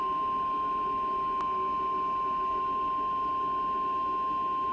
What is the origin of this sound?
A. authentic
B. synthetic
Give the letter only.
A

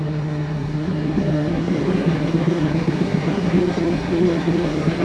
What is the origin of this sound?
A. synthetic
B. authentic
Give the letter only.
A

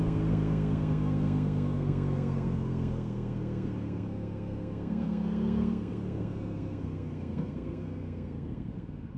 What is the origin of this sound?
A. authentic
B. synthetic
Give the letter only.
B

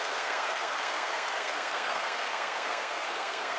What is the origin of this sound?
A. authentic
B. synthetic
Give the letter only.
B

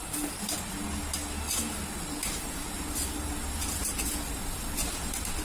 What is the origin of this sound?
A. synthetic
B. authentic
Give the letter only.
B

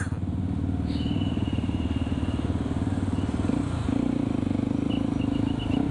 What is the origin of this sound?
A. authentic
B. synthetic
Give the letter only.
A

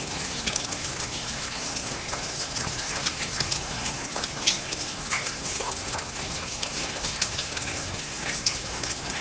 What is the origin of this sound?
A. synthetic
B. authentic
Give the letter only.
A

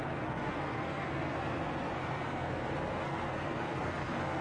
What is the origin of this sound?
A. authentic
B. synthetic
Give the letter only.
B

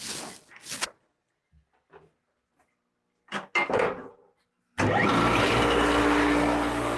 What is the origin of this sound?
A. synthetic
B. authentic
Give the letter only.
B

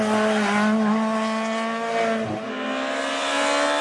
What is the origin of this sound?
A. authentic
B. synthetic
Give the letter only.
A